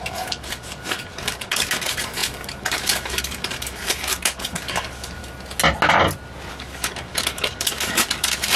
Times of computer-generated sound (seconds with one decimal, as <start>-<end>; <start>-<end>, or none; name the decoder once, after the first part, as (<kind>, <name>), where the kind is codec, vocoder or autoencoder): 0.0-5.2 (codec, DAC); 6.5-8.6